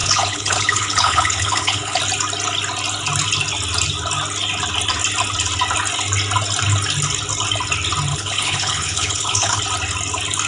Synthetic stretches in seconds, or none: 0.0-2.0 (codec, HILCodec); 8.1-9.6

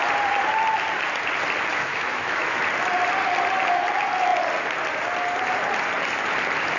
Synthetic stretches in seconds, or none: 1.7-2.6 (autoencoder, DAC-VAE)

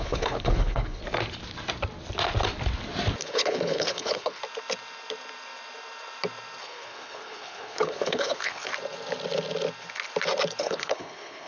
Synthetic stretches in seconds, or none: 0.0-1.0 (codec, HILCodec); 3.2-4.4; 6.6-8.7; 10.6-11.5

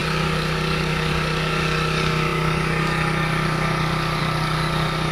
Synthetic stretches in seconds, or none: 0.0-5.1 (codec, DAC)

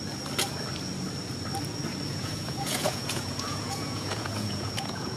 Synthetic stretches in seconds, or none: 2.1-5.2 (vocoder, Vocos)